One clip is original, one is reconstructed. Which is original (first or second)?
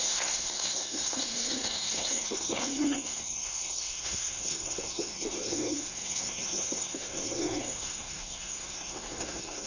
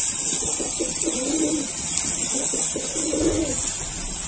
second